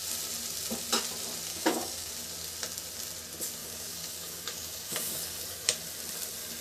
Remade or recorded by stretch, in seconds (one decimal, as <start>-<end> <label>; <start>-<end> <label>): 0.0-1.5 recorded; 1.5-2.1 remade; 2.1-3.6 recorded; 3.6-5.4 remade; 5.4-6.6 recorded